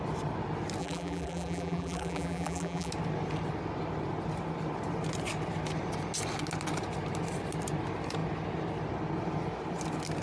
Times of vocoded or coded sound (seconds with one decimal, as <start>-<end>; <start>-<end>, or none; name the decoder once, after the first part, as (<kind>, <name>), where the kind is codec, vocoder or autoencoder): 0.8-2.9 (vocoder, BigVGAN v2)